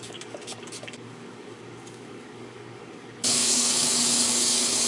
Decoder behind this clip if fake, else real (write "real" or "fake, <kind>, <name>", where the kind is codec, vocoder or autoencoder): fake, codec, DAC